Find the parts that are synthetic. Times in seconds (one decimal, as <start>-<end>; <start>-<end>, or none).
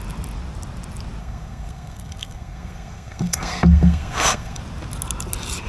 1.2-4.6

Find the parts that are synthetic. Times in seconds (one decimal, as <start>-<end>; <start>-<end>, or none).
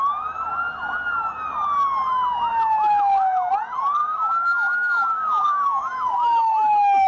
2.5-3.5; 4.0-7.1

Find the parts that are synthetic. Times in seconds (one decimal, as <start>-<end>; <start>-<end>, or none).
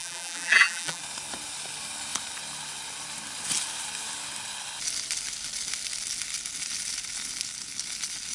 0.0-1.0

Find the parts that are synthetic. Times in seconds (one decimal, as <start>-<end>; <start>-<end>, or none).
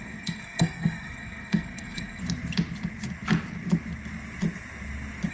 0.0-2.2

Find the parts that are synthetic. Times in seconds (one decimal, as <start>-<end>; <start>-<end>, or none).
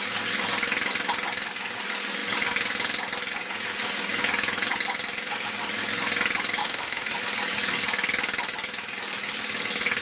6.6-7.2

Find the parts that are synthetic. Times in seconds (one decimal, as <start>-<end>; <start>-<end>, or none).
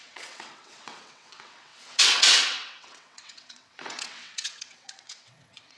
0.0-5.8